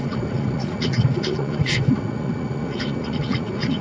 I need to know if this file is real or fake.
fake